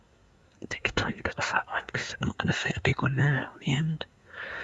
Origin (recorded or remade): remade